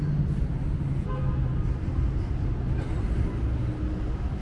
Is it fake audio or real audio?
real